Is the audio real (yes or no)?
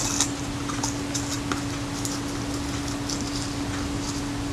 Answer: yes